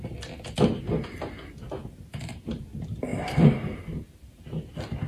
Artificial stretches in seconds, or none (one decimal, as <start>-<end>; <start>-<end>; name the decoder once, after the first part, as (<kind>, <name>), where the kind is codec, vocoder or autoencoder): 1.8-2.6 (vocoder, BigVGAN v2); 3.1-3.8